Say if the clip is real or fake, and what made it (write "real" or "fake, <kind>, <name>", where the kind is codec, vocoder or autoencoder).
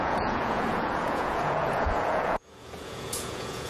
fake, vocoder, Vocos